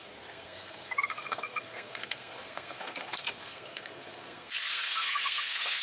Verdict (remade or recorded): remade